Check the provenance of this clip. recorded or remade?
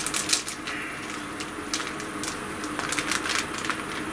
recorded